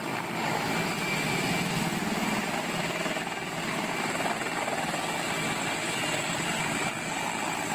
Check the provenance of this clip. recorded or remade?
recorded